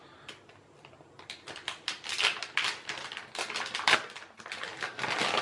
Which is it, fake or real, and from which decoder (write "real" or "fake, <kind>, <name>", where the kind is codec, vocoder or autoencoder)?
real